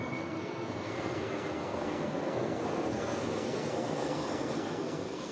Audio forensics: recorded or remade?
remade